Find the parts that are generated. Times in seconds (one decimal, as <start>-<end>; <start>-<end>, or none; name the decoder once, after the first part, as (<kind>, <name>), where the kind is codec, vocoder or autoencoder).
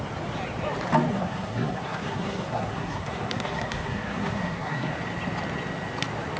1.1-4.9 (codec, SNAC)